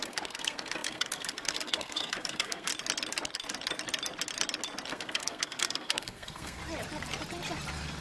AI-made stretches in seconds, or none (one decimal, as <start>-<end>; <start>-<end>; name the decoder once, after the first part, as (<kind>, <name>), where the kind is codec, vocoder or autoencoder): 0.0-2.7 (codec, SNAC); 4.9-6.6